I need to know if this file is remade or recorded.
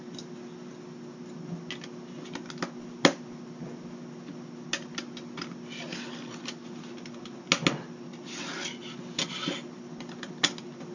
recorded